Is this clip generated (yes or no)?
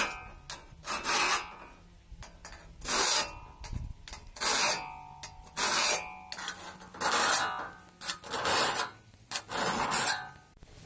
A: no